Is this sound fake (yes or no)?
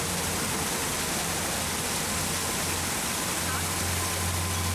no